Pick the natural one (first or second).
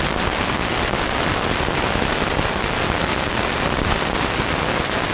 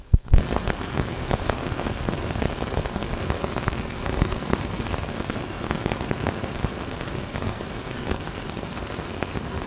first